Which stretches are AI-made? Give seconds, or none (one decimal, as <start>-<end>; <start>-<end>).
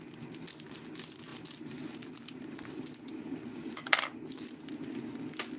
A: none